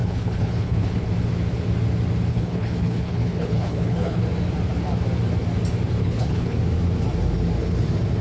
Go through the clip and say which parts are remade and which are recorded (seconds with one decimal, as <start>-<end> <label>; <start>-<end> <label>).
0.0-1.1 remade; 1.1-2.3 recorded; 2.3-4.2 remade; 4.2-6.0 recorded; 6.0-6.6 remade; 6.6-8.2 recorded